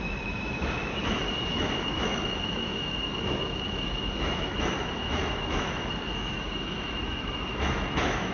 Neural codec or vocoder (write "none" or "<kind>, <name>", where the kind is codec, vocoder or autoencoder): autoencoder, DAC-VAE